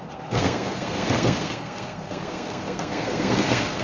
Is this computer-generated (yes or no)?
yes